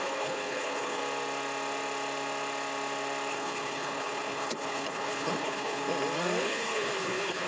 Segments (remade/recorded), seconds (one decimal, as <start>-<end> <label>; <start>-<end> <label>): 0.0-1.0 remade; 1.0-3.3 recorded; 3.3-5.8 remade; 5.8-6.4 recorded; 6.4-7.5 remade